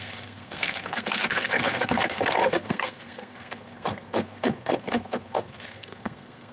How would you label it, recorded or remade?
remade